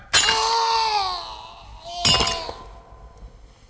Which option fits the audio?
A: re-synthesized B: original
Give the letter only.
B